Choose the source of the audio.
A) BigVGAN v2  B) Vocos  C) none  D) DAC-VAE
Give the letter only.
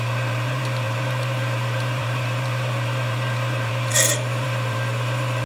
A